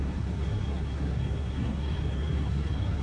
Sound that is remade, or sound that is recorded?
remade